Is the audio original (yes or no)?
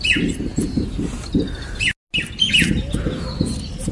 yes